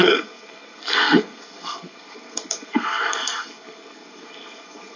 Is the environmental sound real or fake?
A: fake